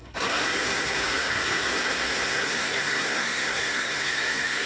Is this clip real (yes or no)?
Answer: no